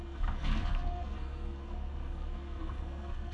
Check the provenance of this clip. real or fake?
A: fake